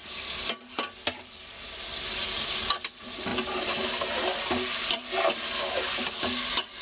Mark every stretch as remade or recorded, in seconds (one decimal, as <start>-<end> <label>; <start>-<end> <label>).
0.0-6.8 recorded